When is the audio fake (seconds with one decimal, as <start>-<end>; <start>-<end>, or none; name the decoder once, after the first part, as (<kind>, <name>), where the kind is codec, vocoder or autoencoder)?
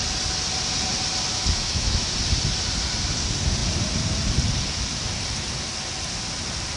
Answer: 1.3-2.1 (autoencoder, DAC-VAE)